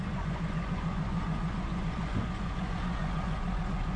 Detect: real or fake fake